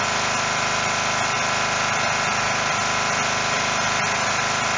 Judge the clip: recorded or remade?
recorded